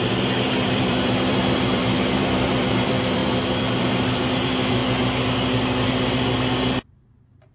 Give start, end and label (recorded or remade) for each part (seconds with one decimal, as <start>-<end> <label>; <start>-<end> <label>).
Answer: 0.0-4.8 remade; 4.8-6.8 recorded; 6.8-7.5 remade